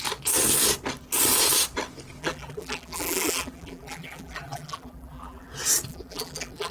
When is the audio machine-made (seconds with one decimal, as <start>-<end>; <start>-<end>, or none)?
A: 2.2-5.5; 5.9-6.7